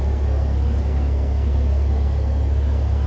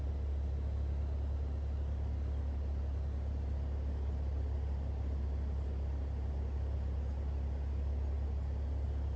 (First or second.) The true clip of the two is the second